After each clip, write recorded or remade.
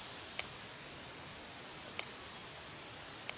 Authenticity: recorded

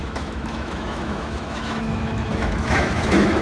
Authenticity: remade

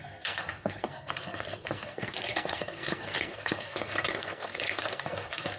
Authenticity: remade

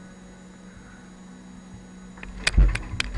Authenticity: recorded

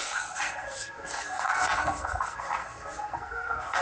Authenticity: remade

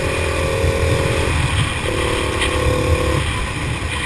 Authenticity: recorded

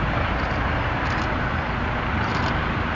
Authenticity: recorded